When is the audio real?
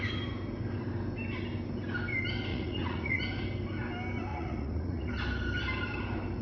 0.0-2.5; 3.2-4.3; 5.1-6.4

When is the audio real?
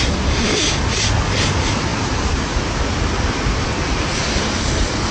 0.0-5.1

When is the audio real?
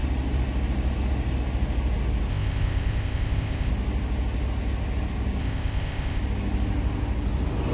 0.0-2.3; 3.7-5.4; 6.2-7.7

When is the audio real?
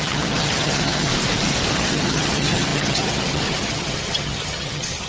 1.1-1.7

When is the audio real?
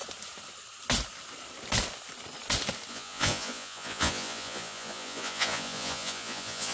0.0-2.9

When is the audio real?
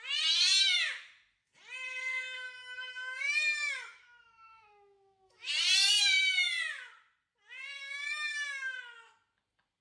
0.0-2.6; 5.5-7.8; 8.8-9.8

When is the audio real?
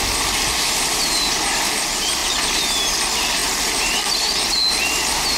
0.0-3.4; 3.9-5.4